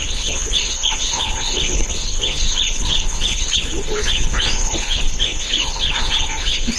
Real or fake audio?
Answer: fake